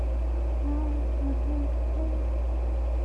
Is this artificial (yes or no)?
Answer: no